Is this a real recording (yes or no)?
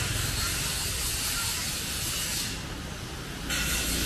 yes